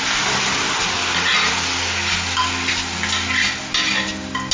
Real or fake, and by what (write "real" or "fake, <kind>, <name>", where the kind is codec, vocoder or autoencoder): real